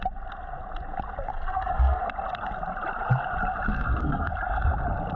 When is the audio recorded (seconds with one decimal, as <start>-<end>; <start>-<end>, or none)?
0.0-1.3; 2.0-3.7; 4.3-5.2